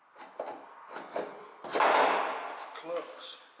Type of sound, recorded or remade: recorded